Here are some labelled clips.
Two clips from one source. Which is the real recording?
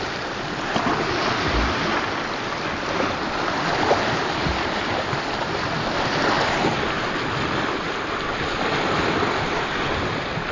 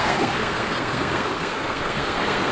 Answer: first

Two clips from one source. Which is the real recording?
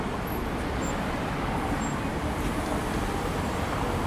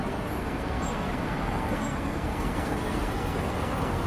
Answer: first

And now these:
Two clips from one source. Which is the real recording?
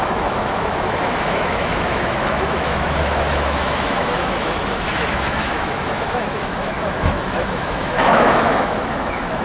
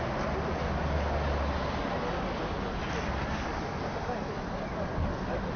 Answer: second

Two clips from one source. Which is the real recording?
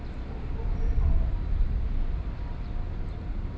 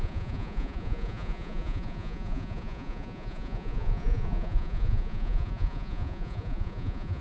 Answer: first